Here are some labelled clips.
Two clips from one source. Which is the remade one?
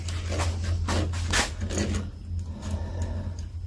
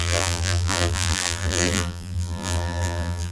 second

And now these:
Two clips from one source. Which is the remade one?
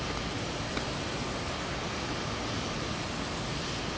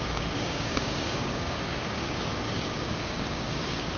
second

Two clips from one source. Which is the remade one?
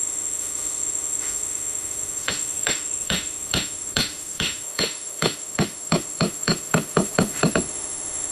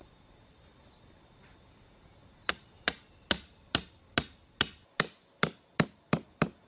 first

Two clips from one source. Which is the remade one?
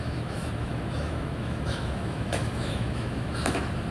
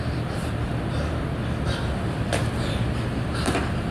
first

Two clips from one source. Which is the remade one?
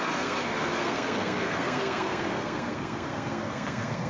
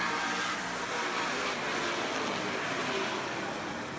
first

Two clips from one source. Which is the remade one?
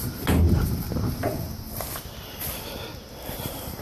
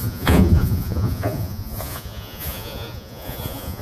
second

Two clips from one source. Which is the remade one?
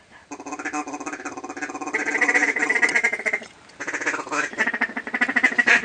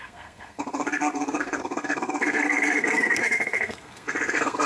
second